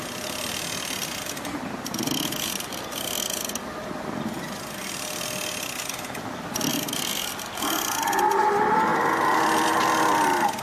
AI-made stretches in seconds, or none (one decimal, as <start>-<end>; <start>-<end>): none